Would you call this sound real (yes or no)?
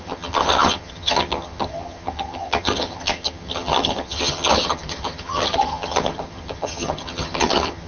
no